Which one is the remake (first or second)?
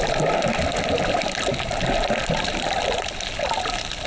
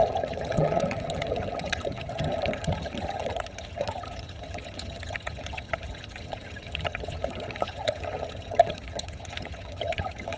second